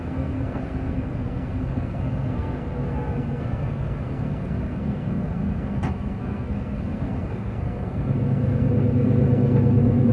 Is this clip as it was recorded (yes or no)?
no